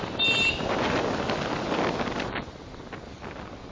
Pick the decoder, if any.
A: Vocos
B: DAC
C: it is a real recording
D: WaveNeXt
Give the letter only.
C